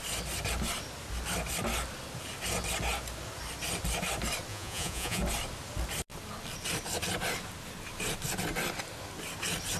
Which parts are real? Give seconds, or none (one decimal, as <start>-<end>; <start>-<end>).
0.0-4.5; 5.2-9.8